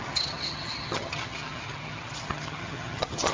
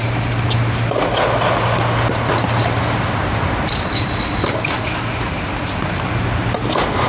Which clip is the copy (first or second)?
first